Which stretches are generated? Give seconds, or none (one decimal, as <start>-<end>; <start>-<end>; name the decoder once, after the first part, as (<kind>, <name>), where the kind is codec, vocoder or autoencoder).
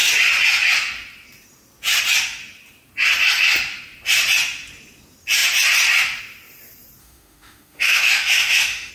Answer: 7.0-8.9 (autoencoder, DAC-VAE)